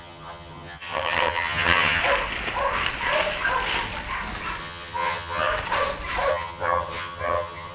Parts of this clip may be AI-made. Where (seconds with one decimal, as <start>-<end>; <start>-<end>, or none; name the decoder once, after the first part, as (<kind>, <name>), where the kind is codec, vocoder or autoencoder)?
0.0-2.0 (vocoder, HiFi-GAN); 4.6-5.5; 6.3-7.7